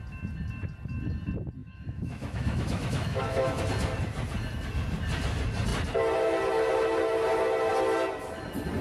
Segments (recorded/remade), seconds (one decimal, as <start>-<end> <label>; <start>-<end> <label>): 0.0-1.6 recorded; 1.6-3.6 remade; 3.6-8.8 recorded